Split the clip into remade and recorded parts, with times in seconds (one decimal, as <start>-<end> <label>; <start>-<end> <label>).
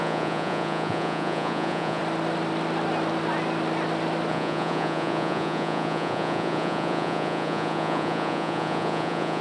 0.0-2.0 remade; 2.0-4.3 recorded; 4.3-9.4 remade